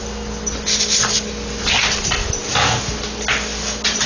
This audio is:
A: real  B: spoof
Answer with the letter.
A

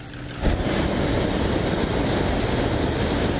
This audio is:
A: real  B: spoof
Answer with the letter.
A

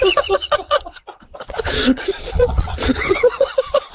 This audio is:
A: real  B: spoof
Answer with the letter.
B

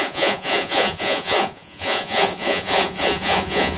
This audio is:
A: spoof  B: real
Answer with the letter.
A